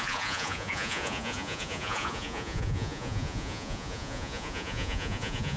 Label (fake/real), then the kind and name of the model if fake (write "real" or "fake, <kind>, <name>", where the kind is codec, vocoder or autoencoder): fake, vocoder, Vocos